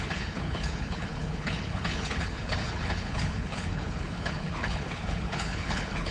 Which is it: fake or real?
fake